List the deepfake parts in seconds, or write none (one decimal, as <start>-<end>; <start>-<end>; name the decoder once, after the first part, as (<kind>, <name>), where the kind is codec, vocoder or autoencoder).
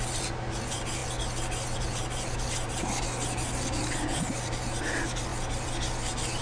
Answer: none